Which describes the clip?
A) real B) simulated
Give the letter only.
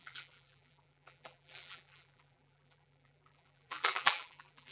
B